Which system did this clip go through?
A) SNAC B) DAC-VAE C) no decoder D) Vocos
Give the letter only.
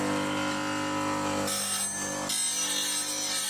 C